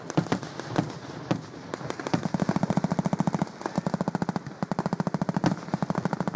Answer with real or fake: real